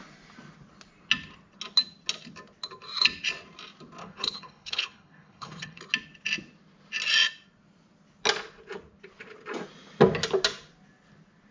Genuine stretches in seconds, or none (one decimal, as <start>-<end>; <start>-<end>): 0.0-4.0; 5.8-11.5